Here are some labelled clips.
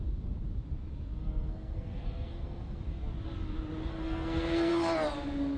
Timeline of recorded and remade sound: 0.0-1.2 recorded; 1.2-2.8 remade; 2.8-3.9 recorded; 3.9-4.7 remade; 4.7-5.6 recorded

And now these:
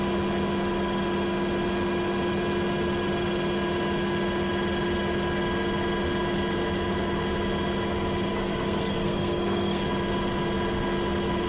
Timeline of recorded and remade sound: 0.0-8.3 recorded; 8.3-9.8 remade; 9.8-11.5 recorded

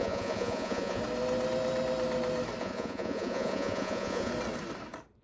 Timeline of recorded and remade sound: 0.0-1.0 remade; 1.0-2.6 recorded; 2.6-4.3 remade; 4.3-5.2 recorded

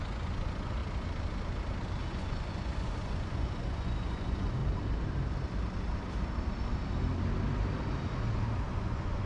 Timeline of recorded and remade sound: 0.0-0.8 remade; 0.8-2.0 recorded; 2.0-4.6 remade; 4.6-8.7 recorded; 8.7-9.3 remade

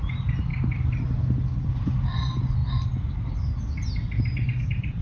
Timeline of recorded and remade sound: 0.0-5.0 recorded

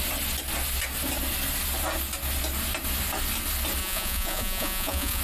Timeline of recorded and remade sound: 0.0-3.8 recorded; 3.8-5.2 remade

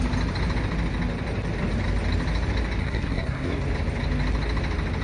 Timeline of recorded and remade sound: 0.0-2.8 recorded; 2.8-3.6 remade; 3.6-5.0 recorded